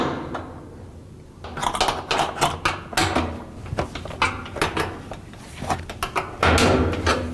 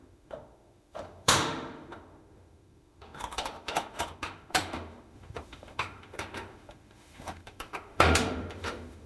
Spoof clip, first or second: second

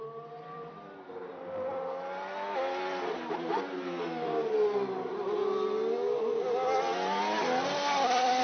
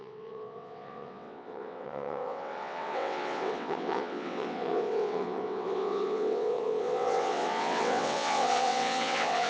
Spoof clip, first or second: second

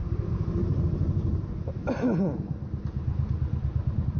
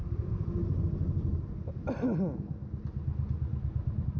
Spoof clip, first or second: first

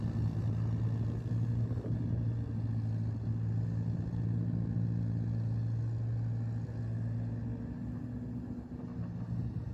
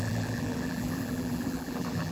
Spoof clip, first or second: second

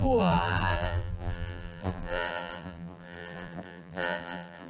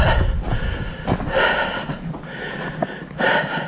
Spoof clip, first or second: first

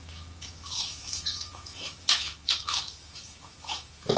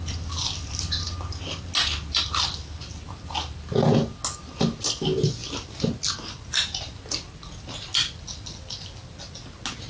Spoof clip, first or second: first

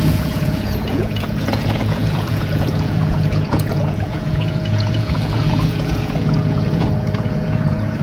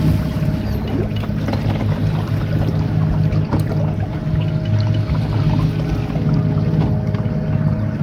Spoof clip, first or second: first